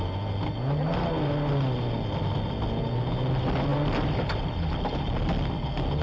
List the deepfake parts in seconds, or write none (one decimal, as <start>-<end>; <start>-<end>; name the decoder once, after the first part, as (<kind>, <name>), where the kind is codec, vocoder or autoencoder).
none